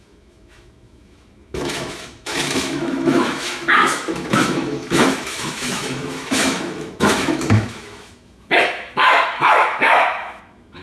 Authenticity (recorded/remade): remade